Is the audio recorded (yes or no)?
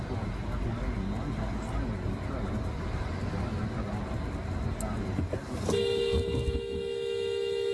yes